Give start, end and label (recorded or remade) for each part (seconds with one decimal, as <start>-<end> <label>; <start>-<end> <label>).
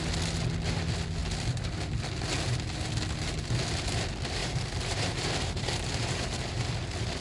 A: 0.0-4.4 recorded; 4.4-6.7 remade; 6.7-7.2 recorded